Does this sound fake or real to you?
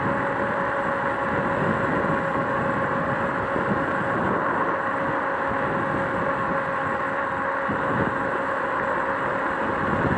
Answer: real